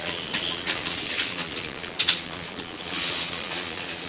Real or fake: fake